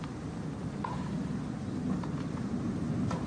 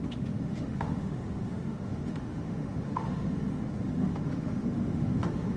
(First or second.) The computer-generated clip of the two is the second